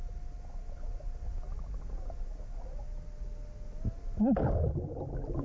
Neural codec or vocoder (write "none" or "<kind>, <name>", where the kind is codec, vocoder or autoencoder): none